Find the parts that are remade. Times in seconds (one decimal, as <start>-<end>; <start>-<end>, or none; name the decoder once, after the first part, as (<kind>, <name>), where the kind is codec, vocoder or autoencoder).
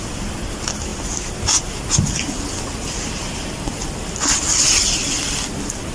none